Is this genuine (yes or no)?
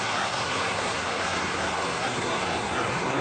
no